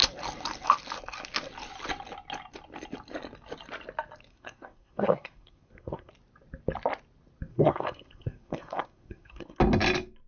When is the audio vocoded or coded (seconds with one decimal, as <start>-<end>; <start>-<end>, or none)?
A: 4.3-6.1; 7.5-9.6

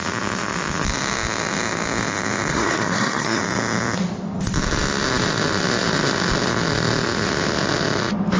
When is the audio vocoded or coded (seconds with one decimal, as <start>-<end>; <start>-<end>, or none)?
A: 2.5-3.4

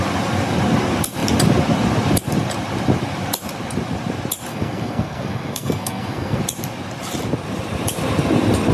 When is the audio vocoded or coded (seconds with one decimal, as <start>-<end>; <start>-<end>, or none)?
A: 4.5-6.4

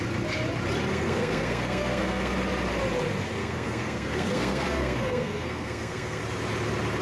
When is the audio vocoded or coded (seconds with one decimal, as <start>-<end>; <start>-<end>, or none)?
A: 0.9-2.3; 3.4-6.2

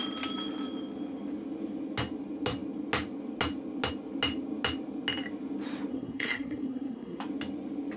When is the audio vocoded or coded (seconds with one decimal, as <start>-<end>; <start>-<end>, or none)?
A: 5.9-7.2

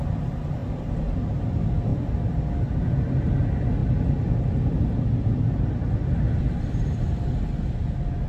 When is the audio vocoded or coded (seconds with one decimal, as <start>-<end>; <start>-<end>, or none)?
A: none